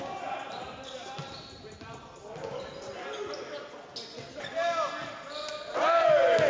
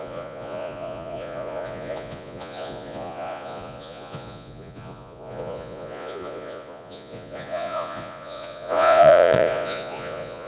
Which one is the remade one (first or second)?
second